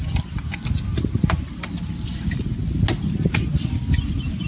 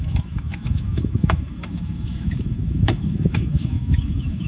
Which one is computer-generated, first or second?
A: second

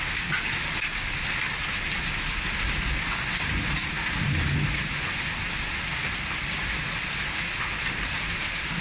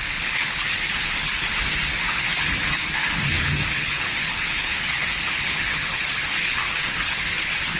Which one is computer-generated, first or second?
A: second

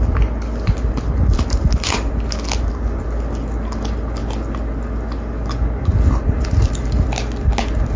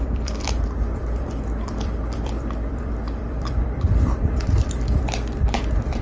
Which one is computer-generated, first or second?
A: second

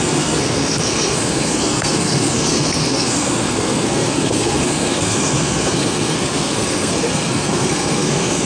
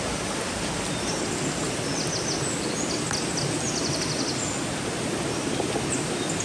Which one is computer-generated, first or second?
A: first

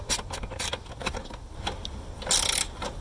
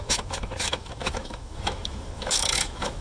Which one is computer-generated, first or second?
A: second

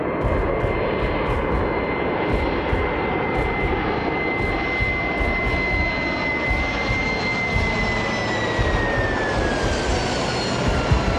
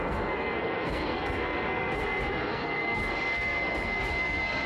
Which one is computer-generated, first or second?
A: second